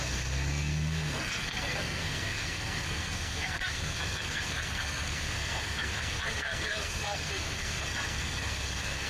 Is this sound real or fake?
fake